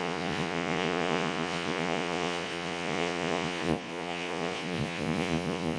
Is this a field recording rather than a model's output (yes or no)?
no